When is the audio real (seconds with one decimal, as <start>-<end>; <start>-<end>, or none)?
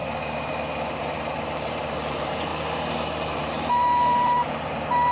0.0-1.0; 2.5-3.7